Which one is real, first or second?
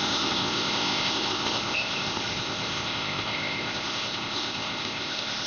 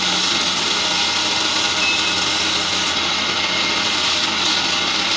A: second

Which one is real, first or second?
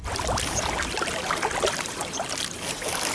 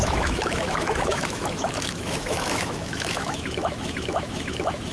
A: first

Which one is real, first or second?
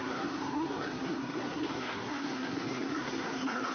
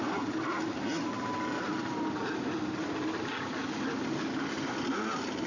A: second